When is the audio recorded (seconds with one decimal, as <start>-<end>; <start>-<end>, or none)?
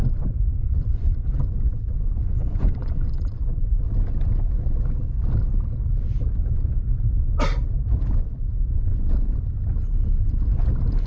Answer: 0.0-0.6; 3.9-11.1